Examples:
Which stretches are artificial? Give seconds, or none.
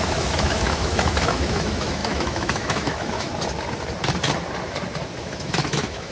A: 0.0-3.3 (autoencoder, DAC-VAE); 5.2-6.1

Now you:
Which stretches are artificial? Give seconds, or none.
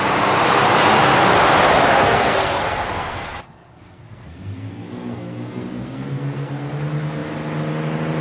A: 1.9-6.8 (codec, SNAC)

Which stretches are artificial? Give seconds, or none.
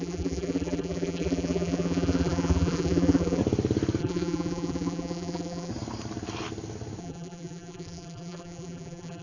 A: 0.0-3.4 (vocoder, BigVGAN v2); 4.0-5.7; 7.0-9.2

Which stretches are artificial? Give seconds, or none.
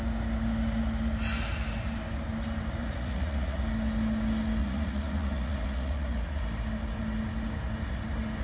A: 2.8-3.6 (vocoder, Vocos); 4.6-6.4